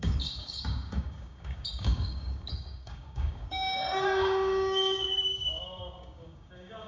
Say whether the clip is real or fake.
fake